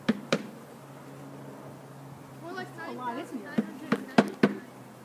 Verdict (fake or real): real